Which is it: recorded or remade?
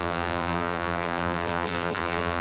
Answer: remade